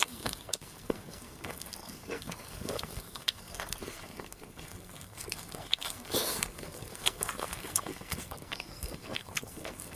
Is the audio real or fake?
fake